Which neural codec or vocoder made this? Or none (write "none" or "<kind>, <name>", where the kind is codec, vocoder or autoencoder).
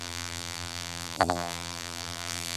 vocoder, BigVGAN v2